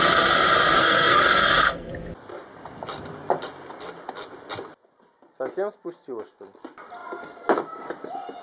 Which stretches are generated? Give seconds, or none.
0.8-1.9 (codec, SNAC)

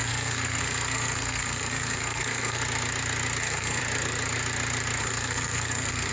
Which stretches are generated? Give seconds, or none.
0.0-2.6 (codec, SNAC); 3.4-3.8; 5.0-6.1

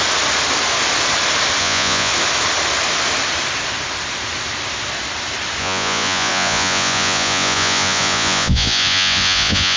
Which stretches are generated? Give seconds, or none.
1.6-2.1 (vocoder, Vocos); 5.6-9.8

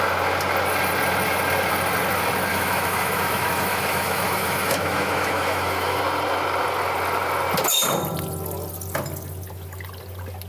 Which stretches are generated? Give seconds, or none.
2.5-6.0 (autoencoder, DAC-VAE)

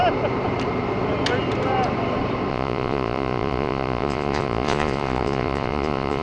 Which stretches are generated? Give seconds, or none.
2.5-6.2 (vocoder, Vocos)

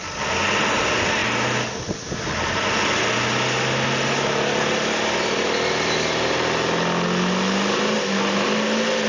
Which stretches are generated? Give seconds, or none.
none